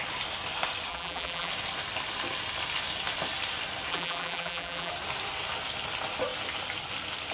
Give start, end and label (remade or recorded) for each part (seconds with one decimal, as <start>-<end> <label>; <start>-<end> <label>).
0.0-0.9 recorded; 0.9-1.5 remade; 1.5-3.9 recorded; 3.9-4.9 remade; 4.9-7.3 recorded